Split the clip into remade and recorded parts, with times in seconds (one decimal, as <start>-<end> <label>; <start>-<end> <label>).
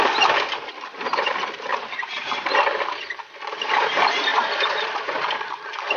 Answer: 0.0-1.7 recorded; 1.7-2.4 remade; 2.4-4.3 recorded; 4.3-5.6 remade; 5.6-6.0 recorded